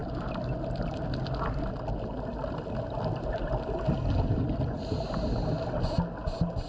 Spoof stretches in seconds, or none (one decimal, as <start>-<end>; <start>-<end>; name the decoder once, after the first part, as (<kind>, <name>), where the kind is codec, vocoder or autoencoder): 0.0-4.0 (vocoder, BigVGAN v2)